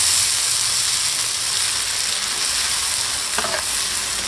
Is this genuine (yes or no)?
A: yes